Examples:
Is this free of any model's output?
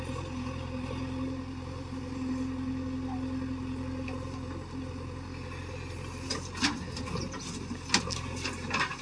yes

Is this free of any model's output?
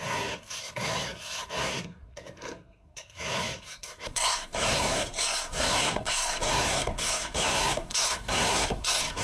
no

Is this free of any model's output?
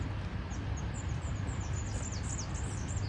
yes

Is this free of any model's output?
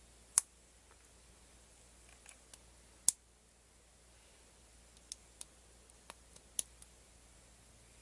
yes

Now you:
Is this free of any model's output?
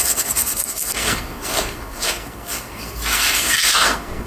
no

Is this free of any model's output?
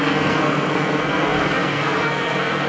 no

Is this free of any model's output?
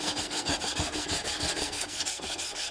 no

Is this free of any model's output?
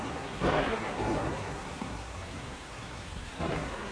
no